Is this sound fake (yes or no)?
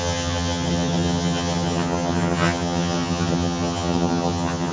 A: yes